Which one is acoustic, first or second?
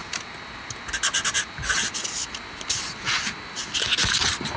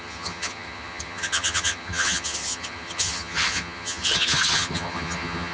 first